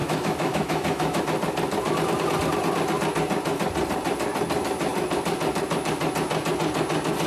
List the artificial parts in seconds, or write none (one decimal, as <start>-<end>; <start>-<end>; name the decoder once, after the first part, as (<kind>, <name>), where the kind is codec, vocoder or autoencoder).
0.0-1.2 (autoencoder, DAC-VAE)